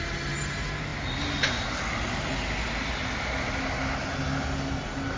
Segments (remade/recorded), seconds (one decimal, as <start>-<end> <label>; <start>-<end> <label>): 0.0-5.2 recorded